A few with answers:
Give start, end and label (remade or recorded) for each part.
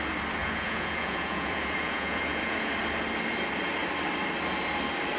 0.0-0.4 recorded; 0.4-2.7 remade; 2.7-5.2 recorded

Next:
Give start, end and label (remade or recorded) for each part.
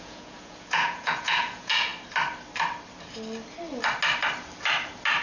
0.0-1.9 remade; 1.9-5.2 recorded